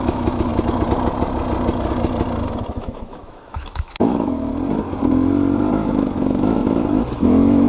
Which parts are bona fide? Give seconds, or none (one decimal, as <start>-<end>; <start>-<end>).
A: 0.5-2.7; 4.5-5.7